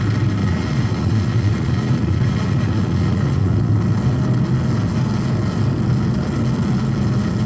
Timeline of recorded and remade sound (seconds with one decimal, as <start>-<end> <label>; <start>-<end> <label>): 0.0-0.4 recorded; 0.4-3.7 remade; 3.7-7.5 recorded

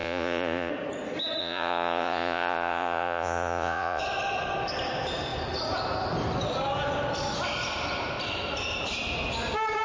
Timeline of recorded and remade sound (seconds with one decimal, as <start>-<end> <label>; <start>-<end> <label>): 0.0-0.7 remade; 0.7-1.4 recorded; 1.4-4.0 remade; 4.0-9.8 recorded

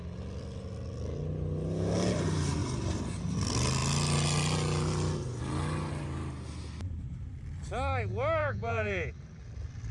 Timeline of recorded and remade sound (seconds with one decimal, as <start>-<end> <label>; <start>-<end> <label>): 0.0-8.4 recorded; 8.4-9.1 remade; 9.1-9.9 recorded

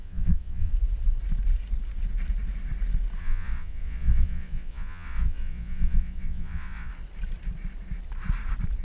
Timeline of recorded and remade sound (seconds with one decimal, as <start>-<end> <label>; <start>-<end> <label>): 0.0-0.7 remade; 0.7-3.2 recorded; 3.2-6.9 remade; 6.9-8.8 recorded

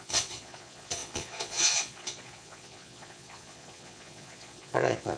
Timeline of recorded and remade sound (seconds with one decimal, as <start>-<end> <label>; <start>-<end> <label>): 0.0-5.2 remade

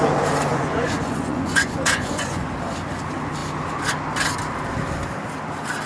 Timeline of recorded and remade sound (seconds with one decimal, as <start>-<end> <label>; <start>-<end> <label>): 0.0-0.5 recorded; 0.5-2.5 remade; 2.5-5.9 recorded

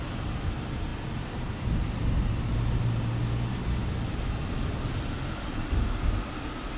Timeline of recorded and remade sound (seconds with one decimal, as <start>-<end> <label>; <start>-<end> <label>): 0.0-6.8 recorded